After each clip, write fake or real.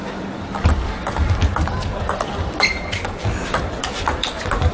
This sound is fake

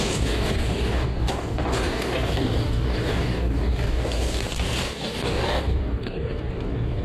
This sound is fake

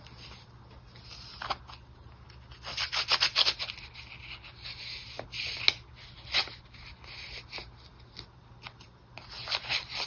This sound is real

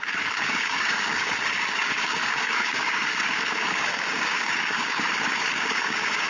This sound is fake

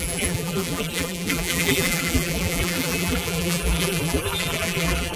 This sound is fake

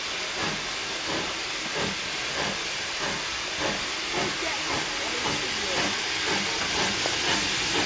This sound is real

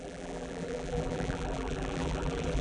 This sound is fake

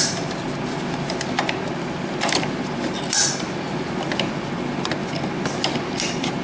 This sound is real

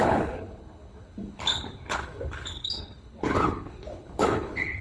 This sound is fake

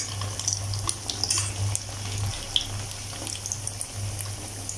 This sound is real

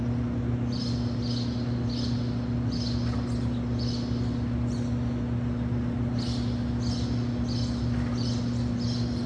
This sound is real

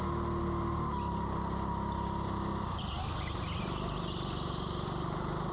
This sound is real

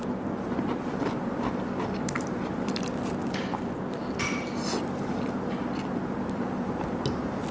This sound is real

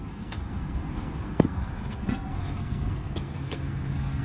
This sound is fake